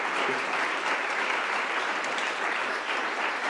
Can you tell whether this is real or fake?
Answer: fake